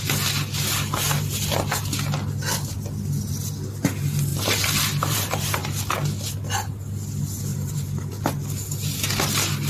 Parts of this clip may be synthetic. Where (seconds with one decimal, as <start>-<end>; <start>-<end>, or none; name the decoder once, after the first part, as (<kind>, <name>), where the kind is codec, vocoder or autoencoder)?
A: 4.3-5.6 (vocoder, BigVGAN v2); 7.5-8.1